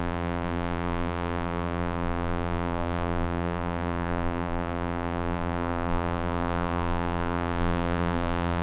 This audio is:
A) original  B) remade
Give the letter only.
B